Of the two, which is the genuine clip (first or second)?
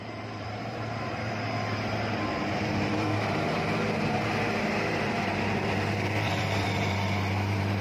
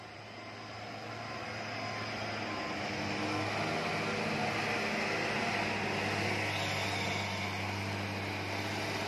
second